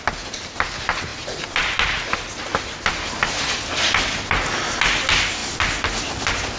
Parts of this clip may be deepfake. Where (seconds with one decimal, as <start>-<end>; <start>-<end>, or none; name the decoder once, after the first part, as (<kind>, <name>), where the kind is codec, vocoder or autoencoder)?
none